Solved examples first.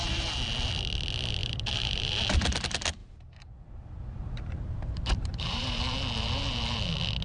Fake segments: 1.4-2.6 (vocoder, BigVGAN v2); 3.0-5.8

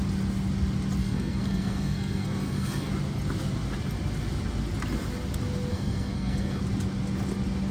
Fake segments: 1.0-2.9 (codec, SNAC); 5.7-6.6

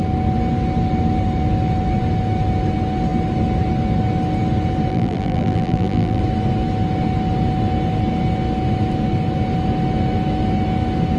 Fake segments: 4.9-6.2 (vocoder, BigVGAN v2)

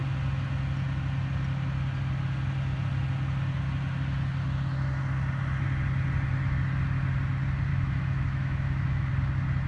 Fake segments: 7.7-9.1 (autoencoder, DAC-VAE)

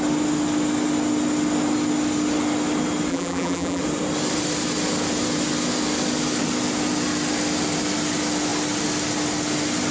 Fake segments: 3.1-3.8 (vocoder, BigVGAN v2)